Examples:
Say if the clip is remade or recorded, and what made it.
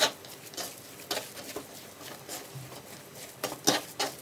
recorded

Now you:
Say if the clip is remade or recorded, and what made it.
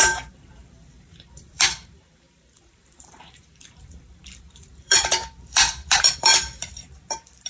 remade, vocoder, BigVGAN v2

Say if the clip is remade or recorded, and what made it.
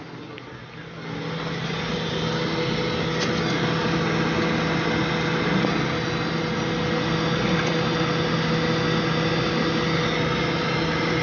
recorded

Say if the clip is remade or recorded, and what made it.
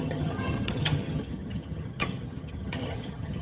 remade, vocoder, HiFi-GAN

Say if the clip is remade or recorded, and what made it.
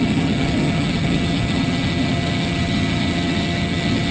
remade, vocoder, HiFi-GAN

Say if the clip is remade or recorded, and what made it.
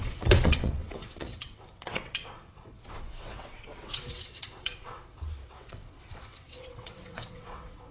remade, vocoder, WaveNeXt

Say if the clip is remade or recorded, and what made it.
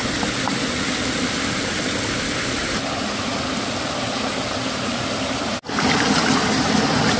recorded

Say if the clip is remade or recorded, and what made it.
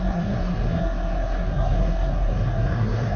remade, codec, SNAC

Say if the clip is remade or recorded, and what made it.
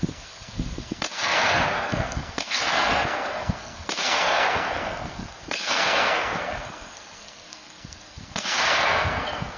remade, codec, SNAC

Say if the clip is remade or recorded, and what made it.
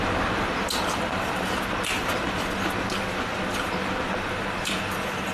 recorded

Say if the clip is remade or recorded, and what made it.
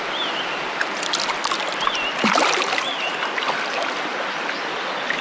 recorded